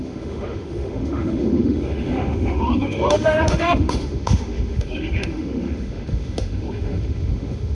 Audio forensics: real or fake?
fake